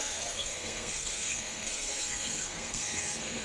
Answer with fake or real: fake